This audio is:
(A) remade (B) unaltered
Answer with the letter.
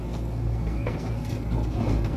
A